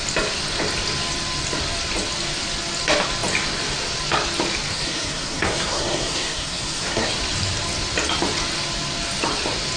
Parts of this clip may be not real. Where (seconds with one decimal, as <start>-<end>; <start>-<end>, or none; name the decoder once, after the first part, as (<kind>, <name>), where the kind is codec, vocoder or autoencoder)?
4.7-7.1 (codec, SNAC)